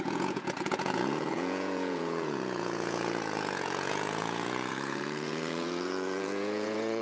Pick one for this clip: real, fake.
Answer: fake